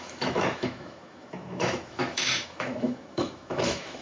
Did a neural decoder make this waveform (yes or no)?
yes